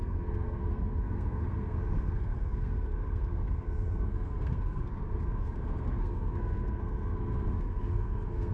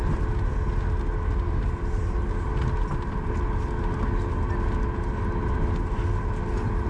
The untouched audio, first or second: second